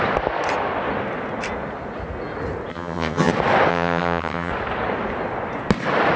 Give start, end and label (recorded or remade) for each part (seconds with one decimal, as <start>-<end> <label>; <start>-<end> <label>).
0.0-2.7 recorded; 2.7-3.3 remade; 3.3-3.7 recorded; 3.7-4.5 remade; 4.5-6.2 recorded